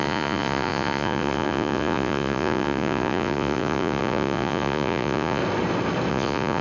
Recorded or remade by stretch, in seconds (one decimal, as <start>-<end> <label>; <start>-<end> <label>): 0.0-5.4 remade; 5.4-6.1 recorded; 6.1-6.6 remade